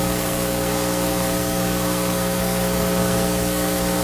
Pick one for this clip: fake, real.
fake